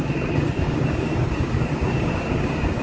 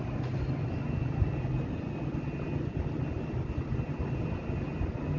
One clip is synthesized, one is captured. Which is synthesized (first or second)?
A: first